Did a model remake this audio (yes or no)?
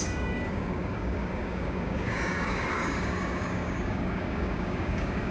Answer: yes